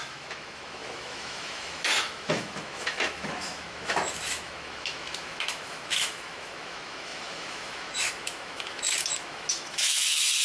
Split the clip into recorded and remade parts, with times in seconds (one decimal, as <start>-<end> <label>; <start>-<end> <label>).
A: 0.0-10.4 remade